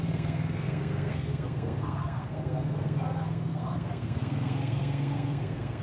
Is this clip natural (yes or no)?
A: no